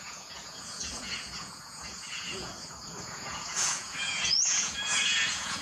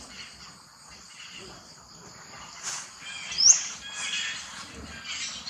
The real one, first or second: second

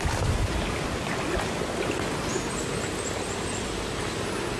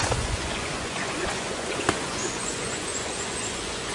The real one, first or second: first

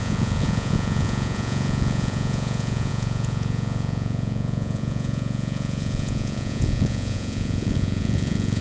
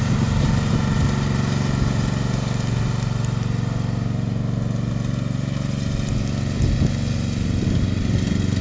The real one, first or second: second